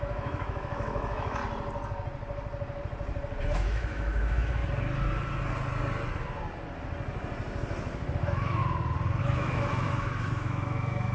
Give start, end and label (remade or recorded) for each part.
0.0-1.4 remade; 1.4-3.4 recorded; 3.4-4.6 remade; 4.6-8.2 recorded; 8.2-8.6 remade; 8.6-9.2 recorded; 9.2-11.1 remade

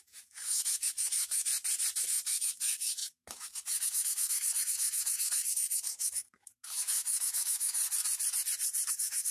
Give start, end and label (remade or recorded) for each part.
0.0-1.5 remade; 1.5-2.0 recorded; 2.0-7.8 remade; 7.8-8.9 recorded; 8.9-9.3 remade

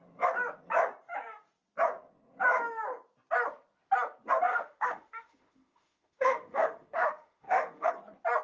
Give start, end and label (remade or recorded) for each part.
0.0-4.5 recorded; 4.5-7.9 remade; 7.9-8.4 recorded